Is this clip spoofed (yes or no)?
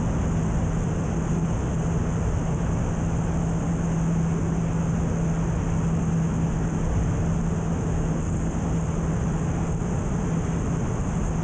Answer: no